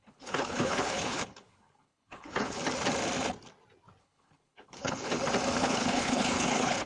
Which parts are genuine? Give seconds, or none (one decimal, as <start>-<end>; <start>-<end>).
2.6-4.0; 5.1-5.6